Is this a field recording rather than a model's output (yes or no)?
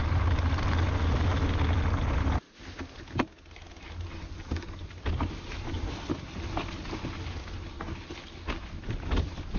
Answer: yes